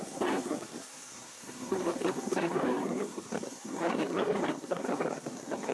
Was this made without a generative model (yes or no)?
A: no